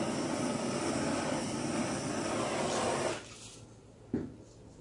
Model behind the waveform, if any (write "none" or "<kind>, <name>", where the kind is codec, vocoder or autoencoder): none